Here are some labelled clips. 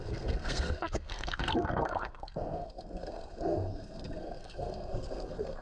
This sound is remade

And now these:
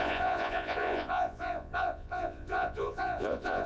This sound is remade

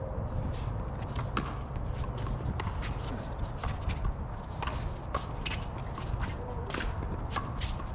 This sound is recorded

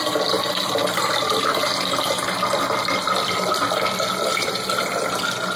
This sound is recorded